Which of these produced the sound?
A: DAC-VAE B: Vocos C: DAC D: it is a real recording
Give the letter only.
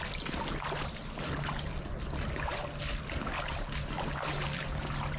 D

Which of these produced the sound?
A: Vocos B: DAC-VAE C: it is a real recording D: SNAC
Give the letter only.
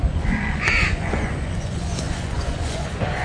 A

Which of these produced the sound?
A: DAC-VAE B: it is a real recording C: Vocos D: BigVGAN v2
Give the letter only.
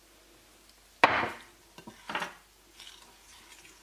B